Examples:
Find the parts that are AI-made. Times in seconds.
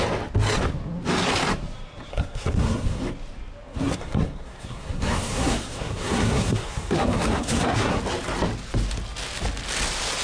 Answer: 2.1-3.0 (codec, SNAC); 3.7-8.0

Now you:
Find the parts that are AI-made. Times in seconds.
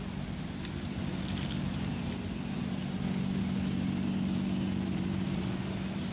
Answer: none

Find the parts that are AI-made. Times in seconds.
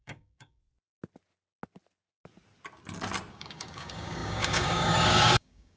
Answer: 0.0-0.6 (codec, DAC); 3.3-5.8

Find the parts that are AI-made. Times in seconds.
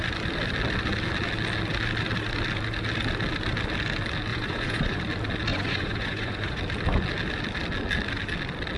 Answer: 4.3-5.0 (vocoder, Vocos); 5.5-6.6